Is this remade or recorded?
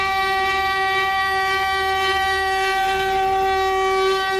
recorded